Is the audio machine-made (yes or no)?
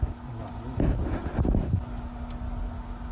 no